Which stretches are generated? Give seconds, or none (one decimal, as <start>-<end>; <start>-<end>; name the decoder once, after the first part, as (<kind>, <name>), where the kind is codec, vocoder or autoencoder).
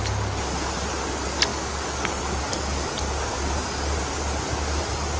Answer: 1.5-2.2 (codec, DAC)